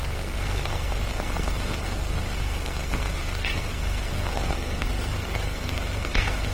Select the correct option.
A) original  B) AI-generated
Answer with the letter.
B